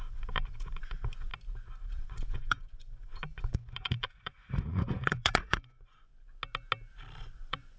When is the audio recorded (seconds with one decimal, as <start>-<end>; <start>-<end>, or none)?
1.3-1.9; 6.1-7.2